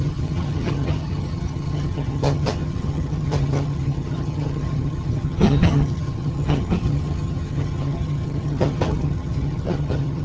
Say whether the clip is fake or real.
fake